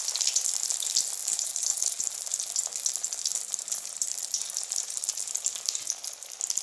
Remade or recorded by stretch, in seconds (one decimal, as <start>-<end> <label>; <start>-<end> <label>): 0.0-1.2 recorded; 1.2-2.4 remade; 2.4-3.3 recorded; 3.3-5.2 remade; 5.2-6.6 recorded